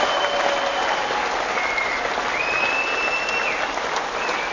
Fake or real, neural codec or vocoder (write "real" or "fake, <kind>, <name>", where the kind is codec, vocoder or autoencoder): real